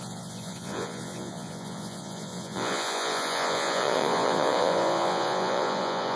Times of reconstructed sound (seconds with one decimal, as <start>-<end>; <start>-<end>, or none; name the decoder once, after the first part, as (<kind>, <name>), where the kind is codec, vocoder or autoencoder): 0.0-6.2 (vocoder, Vocos)